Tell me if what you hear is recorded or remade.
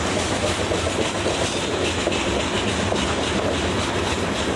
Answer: recorded